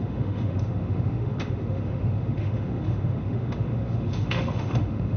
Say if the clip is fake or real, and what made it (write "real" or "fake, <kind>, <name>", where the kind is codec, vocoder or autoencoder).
fake, autoencoder, DAC-VAE